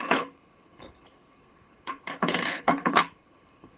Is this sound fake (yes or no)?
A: yes